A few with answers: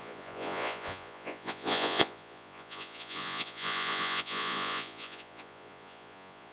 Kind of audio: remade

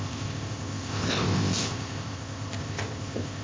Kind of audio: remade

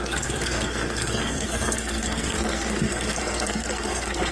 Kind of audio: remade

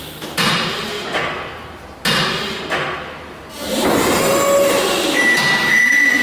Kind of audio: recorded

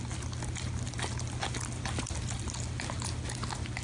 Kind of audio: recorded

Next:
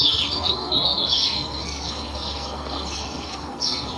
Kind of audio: remade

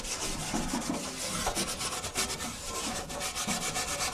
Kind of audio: recorded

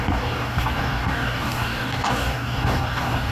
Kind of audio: remade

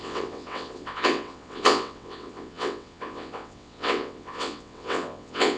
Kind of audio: remade